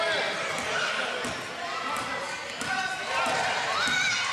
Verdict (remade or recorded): recorded